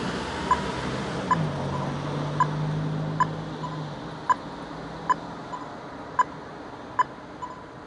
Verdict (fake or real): real